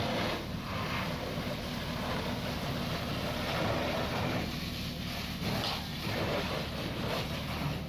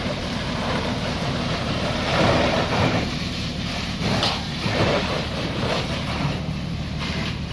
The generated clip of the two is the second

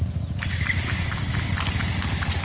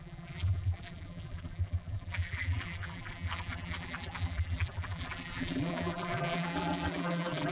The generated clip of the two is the second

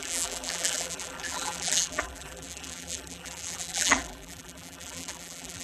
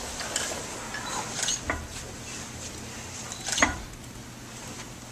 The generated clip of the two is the first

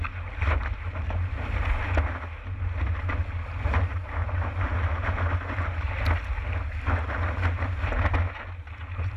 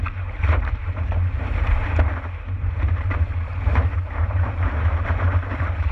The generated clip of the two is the second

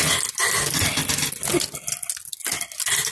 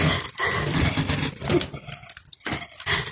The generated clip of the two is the second